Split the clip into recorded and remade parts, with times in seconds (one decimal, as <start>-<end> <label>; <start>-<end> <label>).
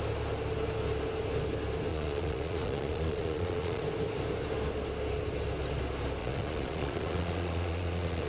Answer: 0.0-1.9 recorded; 1.9-3.8 remade; 3.8-6.2 recorded; 6.2-8.3 remade